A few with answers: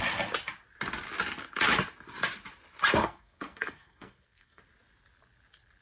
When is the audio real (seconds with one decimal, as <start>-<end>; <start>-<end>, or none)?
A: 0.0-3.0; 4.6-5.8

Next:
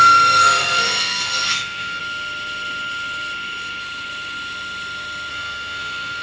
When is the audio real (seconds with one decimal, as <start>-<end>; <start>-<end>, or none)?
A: 2.0-5.3

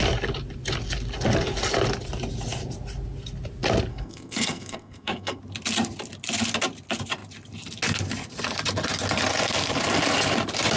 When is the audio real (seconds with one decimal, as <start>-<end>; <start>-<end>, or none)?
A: 0.0-3.9; 5.4-10.8

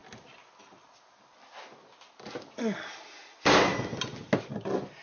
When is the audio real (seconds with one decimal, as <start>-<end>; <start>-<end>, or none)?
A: 0.0-5.0

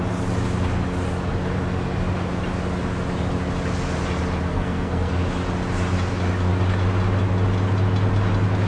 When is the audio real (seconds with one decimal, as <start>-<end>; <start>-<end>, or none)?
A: 0.0-4.5; 5.1-8.7

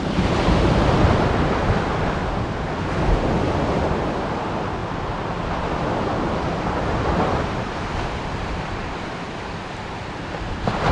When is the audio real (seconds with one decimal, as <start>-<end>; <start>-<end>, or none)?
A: 0.0-10.9